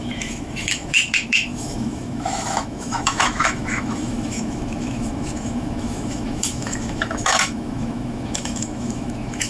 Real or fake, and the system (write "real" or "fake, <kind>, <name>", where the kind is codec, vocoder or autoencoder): fake, autoencoder, DAC-VAE